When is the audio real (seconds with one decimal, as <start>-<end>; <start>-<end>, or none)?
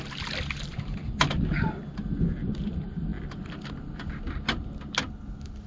0.0-5.7